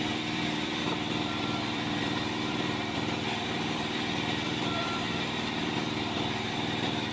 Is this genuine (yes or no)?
no